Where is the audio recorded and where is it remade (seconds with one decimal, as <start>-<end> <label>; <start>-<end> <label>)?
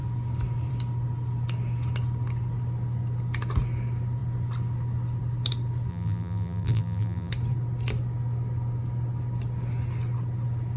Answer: 0.0-5.9 recorded; 5.9-7.3 remade; 7.3-10.8 recorded